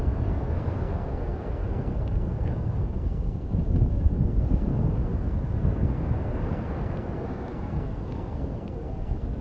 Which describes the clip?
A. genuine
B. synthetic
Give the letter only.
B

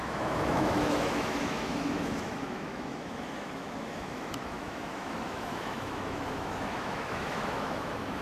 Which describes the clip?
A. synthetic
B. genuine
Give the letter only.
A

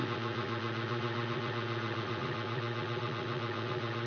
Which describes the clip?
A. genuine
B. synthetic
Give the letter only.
B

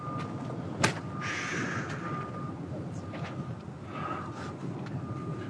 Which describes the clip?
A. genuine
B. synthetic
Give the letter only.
A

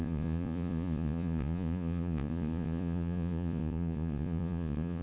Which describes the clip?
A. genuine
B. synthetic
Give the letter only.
B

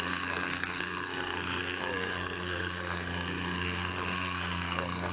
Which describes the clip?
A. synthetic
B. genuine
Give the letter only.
A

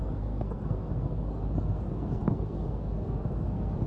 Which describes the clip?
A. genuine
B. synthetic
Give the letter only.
B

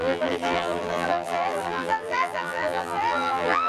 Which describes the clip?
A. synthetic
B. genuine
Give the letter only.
A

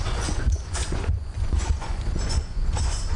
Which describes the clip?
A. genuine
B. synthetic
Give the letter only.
B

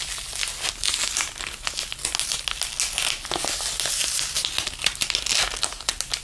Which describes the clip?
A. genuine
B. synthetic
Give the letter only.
A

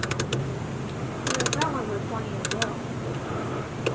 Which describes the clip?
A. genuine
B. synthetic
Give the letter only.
A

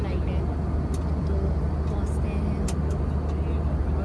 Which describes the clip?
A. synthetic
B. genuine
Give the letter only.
B